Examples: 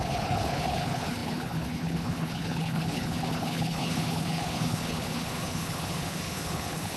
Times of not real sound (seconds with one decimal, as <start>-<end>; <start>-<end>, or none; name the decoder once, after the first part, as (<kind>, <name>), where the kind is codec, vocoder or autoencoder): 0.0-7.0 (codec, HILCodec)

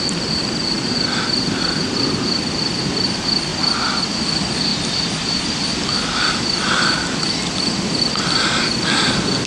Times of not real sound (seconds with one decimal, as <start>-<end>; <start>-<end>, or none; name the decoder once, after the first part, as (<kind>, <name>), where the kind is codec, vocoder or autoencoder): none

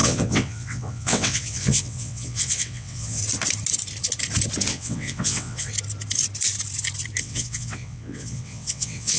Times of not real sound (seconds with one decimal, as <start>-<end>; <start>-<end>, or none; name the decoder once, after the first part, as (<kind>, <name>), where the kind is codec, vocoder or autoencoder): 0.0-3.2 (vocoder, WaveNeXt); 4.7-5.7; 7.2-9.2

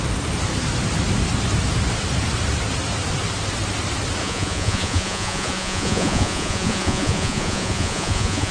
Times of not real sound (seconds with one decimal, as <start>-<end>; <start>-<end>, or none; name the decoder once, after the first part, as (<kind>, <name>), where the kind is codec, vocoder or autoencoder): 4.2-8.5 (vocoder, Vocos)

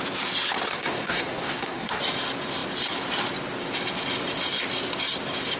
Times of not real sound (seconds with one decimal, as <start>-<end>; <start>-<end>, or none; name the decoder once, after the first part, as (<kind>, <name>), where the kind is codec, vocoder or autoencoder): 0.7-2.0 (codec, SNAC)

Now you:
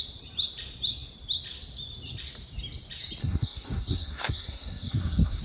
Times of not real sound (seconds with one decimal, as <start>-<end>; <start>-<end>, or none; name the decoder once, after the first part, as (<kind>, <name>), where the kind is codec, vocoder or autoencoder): 3.2-5.4 (codec, SNAC)

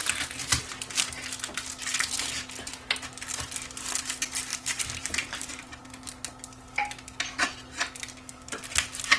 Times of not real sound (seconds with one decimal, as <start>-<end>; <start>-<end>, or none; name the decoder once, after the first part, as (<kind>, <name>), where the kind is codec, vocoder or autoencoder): 0.0-0.7 (vocoder, BigVGAN v2); 4.5-5.8

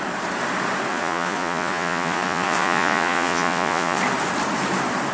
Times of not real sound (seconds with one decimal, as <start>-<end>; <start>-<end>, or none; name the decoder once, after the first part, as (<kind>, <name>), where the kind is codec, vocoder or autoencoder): 0.9-4.0 (vocoder, Vocos)